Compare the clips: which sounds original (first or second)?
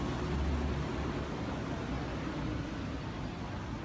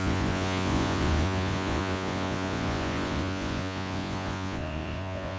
first